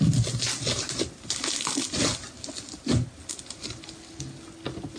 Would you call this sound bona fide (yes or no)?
yes